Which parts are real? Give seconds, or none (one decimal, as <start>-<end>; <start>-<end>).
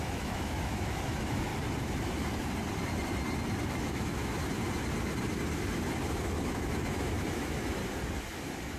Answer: 1.5-3.7; 4.4-6.0; 7.8-8.3